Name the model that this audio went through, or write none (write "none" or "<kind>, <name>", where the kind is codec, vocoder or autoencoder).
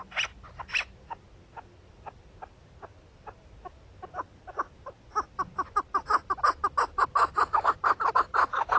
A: none